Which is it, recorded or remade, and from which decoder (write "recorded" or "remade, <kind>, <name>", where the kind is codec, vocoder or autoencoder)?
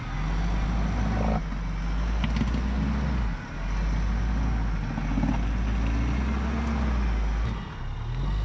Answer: recorded